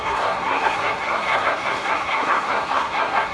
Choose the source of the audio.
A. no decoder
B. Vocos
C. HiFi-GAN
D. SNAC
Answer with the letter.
D